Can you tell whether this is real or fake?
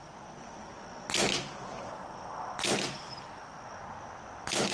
real